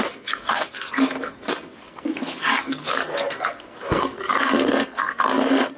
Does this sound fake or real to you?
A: fake